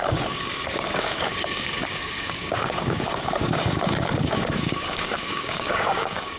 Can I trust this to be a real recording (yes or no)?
no